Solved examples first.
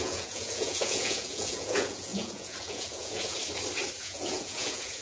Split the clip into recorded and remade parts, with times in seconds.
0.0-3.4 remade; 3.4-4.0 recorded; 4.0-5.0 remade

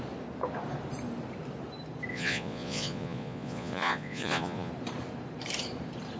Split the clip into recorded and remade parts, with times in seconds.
0.0-2.1 recorded; 2.1-4.7 remade; 4.7-6.2 recorded

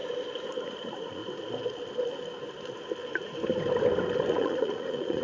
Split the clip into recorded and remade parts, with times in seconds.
0.0-0.6 recorded; 0.6-1.2 remade; 1.2-4.3 recorded; 4.3-5.2 remade